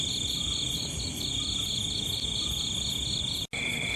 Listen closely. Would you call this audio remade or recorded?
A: recorded